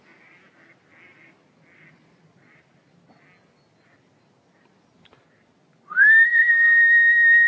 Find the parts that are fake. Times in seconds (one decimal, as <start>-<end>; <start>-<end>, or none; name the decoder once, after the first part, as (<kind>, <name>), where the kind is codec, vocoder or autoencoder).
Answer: 5.9-6.8 (codec, SNAC)